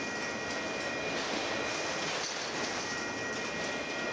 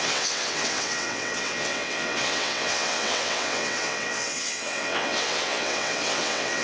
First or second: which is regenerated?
second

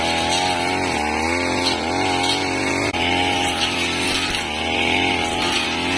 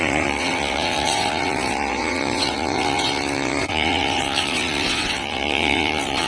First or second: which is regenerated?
second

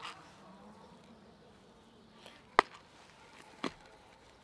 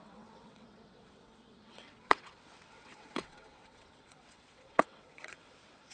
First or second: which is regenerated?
second